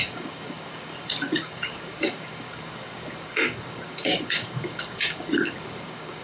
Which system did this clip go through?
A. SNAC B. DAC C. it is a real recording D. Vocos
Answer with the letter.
B